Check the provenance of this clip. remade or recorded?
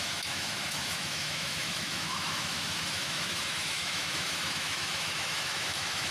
remade